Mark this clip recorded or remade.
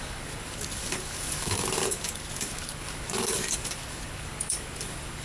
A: remade